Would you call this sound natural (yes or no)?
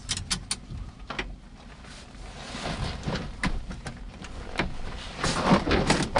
yes